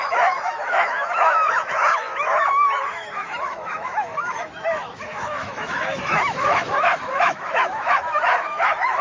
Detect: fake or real fake